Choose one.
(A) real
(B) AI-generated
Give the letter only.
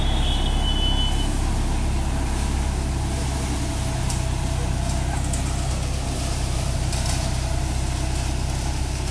A